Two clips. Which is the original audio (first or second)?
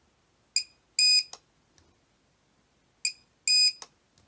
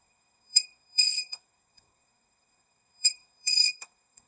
first